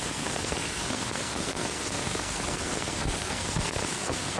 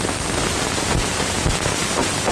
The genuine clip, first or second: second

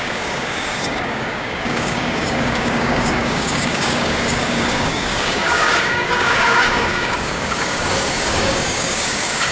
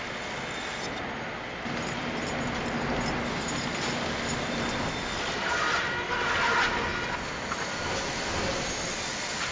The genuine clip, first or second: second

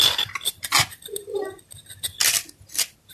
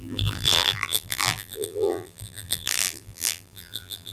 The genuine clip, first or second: first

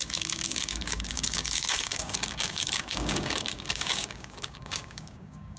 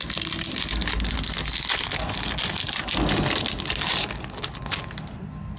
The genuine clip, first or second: second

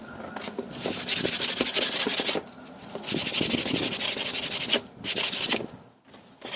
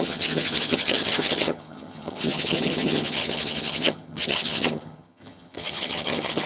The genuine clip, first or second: first